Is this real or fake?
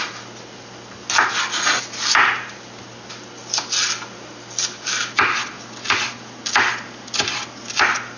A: real